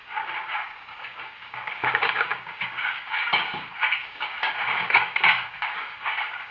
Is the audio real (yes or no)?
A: no